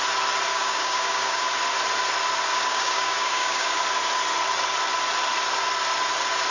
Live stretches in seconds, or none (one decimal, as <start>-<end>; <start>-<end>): 0.0-0.5; 1.4-2.5; 3.8-6.5